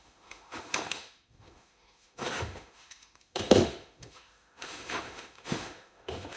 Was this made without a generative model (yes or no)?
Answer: no